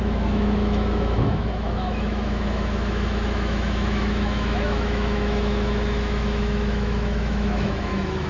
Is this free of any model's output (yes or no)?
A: no